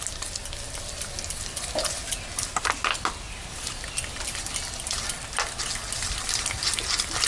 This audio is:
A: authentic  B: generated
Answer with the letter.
A